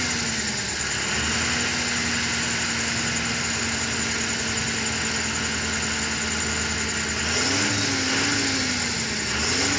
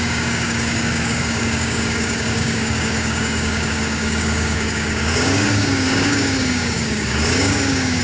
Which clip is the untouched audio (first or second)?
first